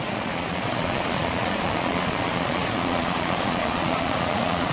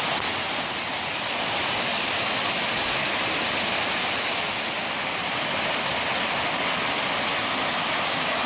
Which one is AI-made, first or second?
first